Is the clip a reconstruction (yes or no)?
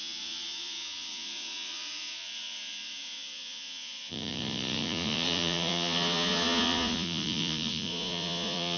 yes